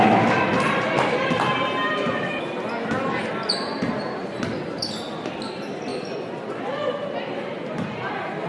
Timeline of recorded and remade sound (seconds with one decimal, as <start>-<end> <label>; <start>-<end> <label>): 0.0-8.5 recorded